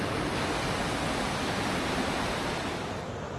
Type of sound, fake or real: real